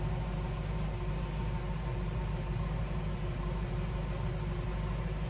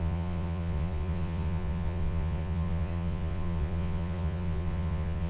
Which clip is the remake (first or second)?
second